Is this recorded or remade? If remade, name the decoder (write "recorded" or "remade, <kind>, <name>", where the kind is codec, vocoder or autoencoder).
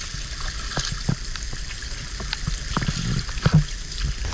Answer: recorded